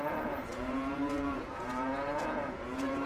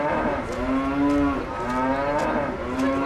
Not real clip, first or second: first